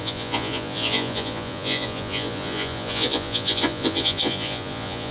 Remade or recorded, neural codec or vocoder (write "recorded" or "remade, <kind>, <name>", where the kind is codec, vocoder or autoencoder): remade, vocoder, Vocos